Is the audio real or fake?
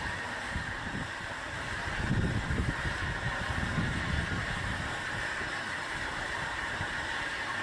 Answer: fake